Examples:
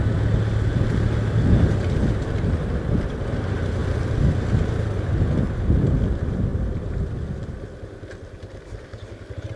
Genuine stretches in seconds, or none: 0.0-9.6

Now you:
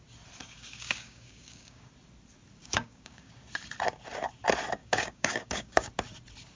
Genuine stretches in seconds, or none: 0.0-0.4; 1.9-2.6; 3.3-4.8; 5.9-6.6